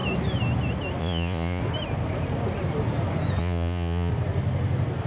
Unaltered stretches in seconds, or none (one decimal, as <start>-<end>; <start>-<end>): 0.0-1.0; 1.6-3.4; 4.1-5.1